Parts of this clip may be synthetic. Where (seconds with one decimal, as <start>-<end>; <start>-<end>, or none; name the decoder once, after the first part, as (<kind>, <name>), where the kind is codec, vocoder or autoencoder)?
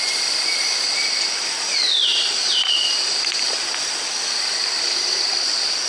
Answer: none